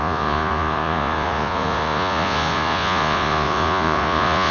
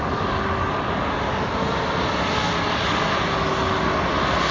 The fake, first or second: first